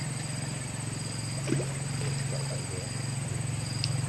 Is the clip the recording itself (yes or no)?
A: yes